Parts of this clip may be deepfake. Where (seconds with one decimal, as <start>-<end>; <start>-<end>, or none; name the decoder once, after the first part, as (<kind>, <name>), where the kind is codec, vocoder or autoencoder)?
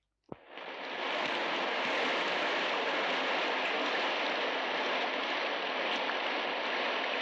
none